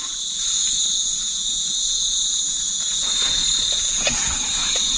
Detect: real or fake fake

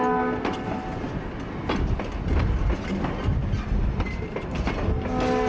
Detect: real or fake real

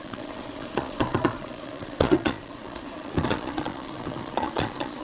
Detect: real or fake fake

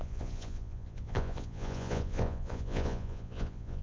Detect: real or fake fake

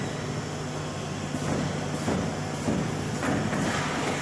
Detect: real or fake real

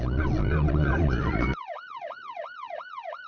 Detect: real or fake fake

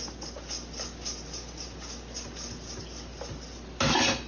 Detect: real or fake real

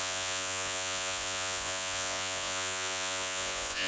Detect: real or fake fake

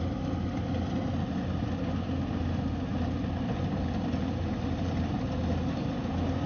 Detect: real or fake real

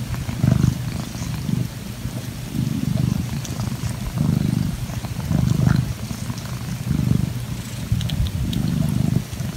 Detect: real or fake real